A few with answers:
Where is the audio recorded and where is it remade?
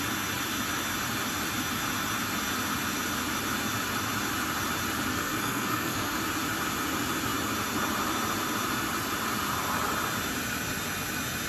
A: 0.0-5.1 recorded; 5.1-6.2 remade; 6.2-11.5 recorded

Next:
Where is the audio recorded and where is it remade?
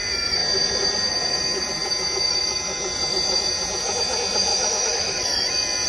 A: 0.0-4.5 recorded; 4.5-5.5 remade; 5.5-5.9 recorded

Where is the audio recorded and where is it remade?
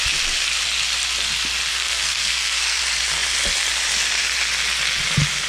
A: 0.0-1.7 recorded; 1.7-2.8 remade; 2.8-5.5 recorded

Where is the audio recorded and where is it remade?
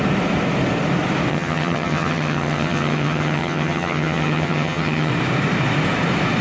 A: 0.0-1.3 recorded; 1.3-5.1 remade; 5.1-6.4 recorded